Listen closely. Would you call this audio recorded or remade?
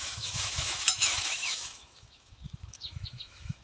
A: remade